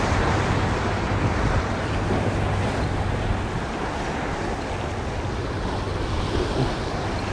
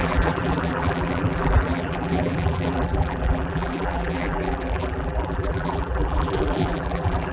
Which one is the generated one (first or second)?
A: second